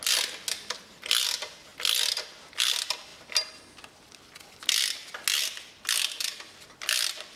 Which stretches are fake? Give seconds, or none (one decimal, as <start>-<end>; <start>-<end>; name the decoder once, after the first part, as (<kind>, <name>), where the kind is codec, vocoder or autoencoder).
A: none